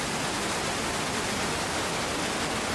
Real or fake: real